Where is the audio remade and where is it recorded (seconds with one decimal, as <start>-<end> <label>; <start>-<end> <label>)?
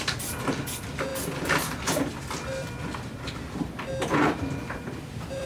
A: 0.0-1.1 remade; 1.1-4.4 recorded; 4.4-5.5 remade